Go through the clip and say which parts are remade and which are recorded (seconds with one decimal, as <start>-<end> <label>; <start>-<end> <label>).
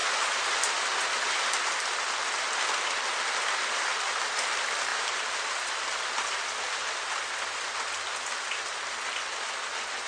0.0-4.9 recorded; 4.9-5.7 remade; 5.7-10.1 recorded